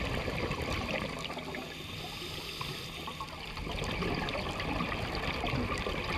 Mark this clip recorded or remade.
recorded